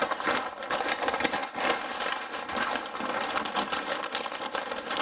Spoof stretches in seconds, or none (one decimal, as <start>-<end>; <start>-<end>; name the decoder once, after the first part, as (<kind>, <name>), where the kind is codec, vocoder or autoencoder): 1.4-4.4 (vocoder, BigVGAN v2)